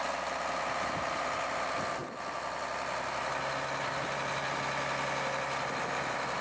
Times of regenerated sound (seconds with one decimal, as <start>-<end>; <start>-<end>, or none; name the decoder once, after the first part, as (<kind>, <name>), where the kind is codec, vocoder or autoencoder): none